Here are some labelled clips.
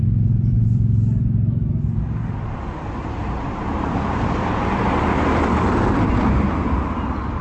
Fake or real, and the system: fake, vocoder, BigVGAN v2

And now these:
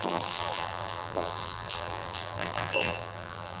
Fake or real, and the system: fake, vocoder, BigVGAN v2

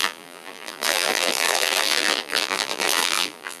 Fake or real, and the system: fake, vocoder, BigVGAN v2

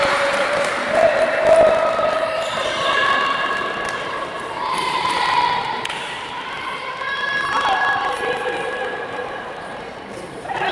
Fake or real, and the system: fake, vocoder, BigVGAN v2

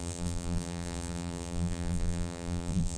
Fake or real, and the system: fake, vocoder, BigVGAN v2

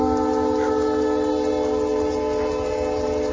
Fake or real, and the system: real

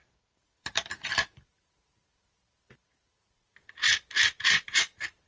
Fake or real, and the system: fake, vocoder, BigVGAN v2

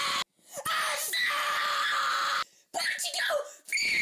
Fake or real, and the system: real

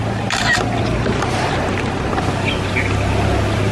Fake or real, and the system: real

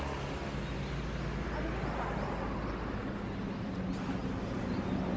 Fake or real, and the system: real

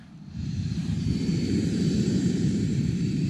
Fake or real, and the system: fake, vocoder, BigVGAN v2